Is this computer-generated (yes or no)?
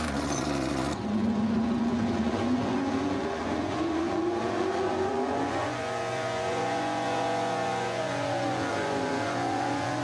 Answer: yes